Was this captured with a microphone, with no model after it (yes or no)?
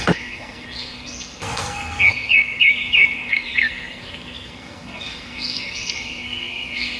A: no